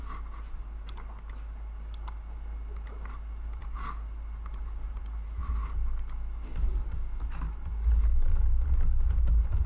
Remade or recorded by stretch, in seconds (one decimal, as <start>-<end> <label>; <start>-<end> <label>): 0.0-9.7 recorded